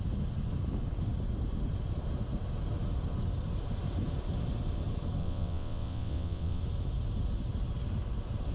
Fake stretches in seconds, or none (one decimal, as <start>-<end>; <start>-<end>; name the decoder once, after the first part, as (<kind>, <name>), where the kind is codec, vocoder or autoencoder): 5.2-6.6 (vocoder, WaveNeXt)